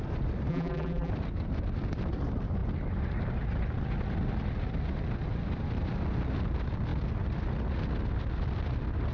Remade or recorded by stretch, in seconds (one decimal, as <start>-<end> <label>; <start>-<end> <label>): 0.0-0.5 recorded; 0.5-1.1 remade; 1.1-9.1 recorded